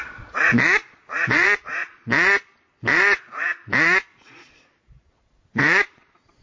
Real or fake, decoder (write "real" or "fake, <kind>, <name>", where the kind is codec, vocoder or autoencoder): fake, vocoder, Vocos